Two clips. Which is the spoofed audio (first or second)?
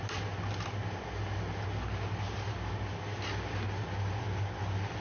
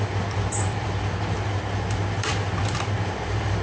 second